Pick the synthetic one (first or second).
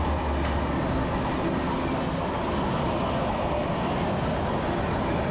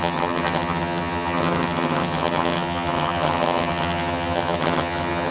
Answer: second